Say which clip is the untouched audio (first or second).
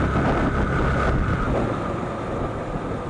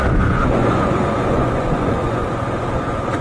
first